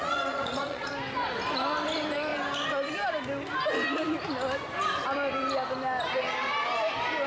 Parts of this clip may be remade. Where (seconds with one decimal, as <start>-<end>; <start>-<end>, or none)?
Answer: 0.0-0.9